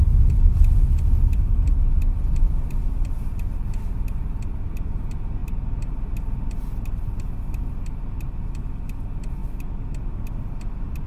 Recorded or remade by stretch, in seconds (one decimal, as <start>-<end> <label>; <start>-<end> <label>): 0.0-11.1 recorded